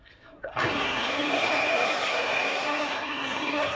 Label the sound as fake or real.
fake